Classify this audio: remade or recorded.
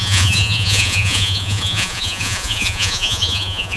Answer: remade